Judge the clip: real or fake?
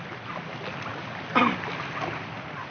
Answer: real